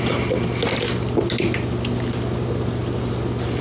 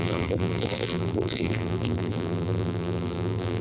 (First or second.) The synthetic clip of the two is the second